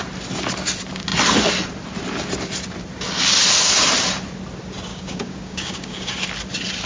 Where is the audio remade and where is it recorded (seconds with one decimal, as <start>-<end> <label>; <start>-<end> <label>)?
0.0-4.9 recorded; 4.9-6.1 remade; 6.1-6.9 recorded